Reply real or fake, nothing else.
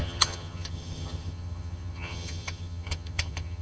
fake